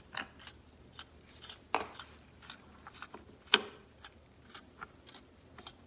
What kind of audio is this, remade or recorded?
recorded